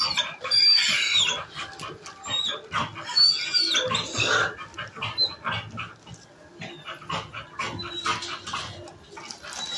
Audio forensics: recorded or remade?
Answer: recorded